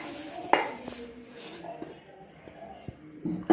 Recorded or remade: recorded